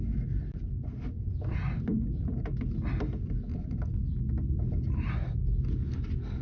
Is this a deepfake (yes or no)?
no